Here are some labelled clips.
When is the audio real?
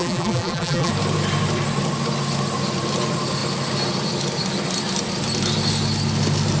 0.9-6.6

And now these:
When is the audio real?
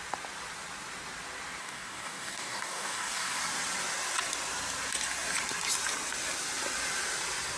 0.0-1.6; 3.4-7.6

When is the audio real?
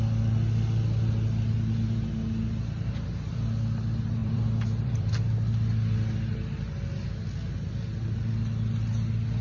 0.0-4.2; 5.1-9.4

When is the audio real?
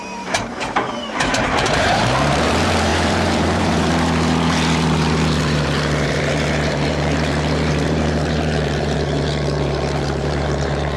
none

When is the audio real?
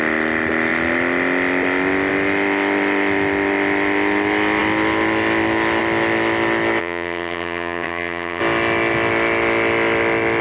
0.0-6.8; 8.4-10.4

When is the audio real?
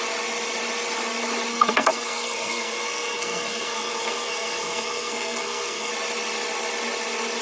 0.0-1.5; 5.9-7.4